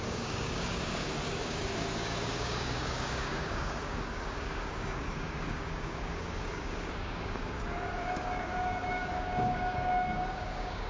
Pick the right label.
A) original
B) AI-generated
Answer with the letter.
B